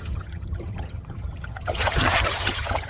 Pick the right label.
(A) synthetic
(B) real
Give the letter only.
A